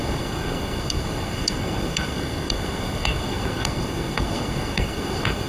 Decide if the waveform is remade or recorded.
remade